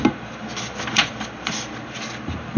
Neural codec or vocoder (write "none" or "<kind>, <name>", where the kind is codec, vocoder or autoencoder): none